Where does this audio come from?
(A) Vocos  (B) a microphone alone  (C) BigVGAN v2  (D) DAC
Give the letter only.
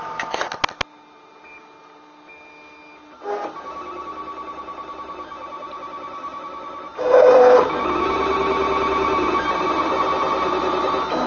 B